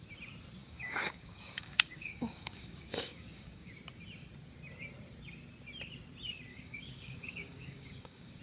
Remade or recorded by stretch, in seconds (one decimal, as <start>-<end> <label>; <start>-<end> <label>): 0.0-0.6 recorded; 0.6-3.7 remade; 3.7-6.5 recorded; 6.5-8.4 remade